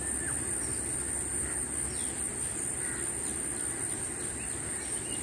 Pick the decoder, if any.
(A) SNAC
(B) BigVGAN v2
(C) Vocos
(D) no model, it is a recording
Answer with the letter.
D